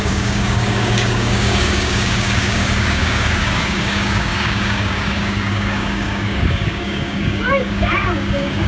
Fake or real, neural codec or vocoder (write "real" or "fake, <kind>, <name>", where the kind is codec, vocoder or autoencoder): fake, codec, DAC